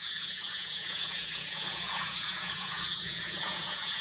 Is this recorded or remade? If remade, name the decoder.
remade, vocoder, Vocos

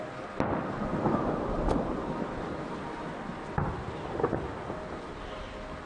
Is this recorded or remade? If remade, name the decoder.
recorded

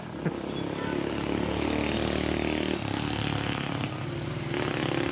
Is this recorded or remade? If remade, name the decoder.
recorded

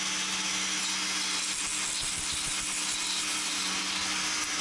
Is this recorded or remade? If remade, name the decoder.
recorded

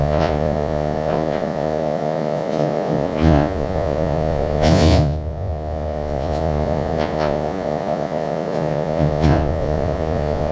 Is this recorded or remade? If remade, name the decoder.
remade, vocoder, Vocos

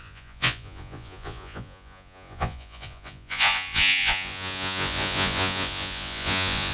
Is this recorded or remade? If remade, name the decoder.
remade, vocoder, Vocos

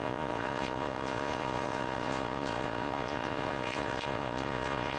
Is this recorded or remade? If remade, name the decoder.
remade, vocoder, Vocos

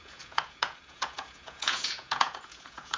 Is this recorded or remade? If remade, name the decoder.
remade, vocoder, Vocos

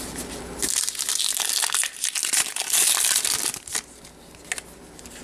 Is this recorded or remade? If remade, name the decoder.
recorded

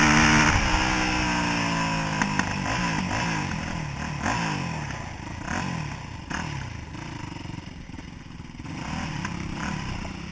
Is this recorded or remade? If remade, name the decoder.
recorded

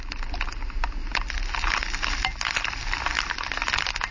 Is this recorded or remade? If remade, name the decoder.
recorded